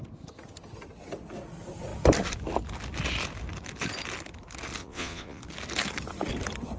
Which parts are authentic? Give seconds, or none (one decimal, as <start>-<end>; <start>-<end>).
0.0-4.8; 5.4-6.8